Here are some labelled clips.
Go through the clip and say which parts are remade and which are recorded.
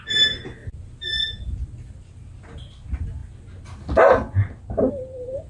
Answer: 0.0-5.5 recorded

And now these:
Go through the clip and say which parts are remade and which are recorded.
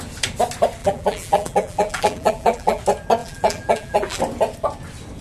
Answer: 0.0-0.8 recorded; 0.8-2.8 remade; 2.8-3.2 recorded; 3.2-4.2 remade; 4.2-5.2 recorded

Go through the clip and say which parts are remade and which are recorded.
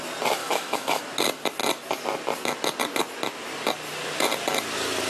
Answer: 0.0-0.4 recorded; 0.4-1.0 remade; 1.0-5.1 recorded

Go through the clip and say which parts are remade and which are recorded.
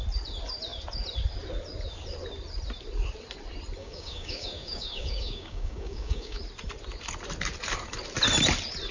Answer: 0.0-3.8 recorded; 3.8-6.4 remade; 6.4-8.9 recorded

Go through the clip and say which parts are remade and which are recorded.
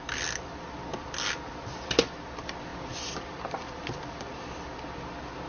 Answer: 0.0-5.5 recorded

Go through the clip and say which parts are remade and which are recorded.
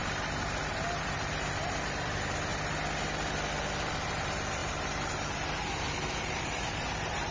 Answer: 0.0-0.7 recorded; 0.7-2.5 remade; 2.5-3.9 recorded; 3.9-7.3 remade